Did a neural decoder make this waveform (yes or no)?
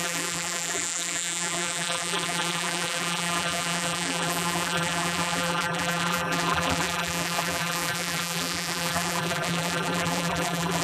yes